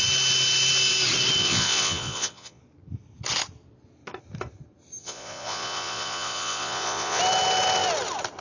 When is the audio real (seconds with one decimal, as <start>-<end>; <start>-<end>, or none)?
0.0-1.4; 2.6-5.0; 7.2-8.4